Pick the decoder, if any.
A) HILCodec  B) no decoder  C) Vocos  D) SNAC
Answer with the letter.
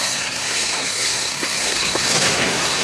D